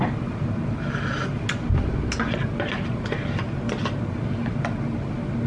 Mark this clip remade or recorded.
recorded